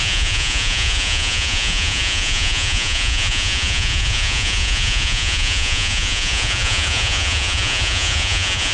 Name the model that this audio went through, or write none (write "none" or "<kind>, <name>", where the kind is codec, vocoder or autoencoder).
vocoder, Vocos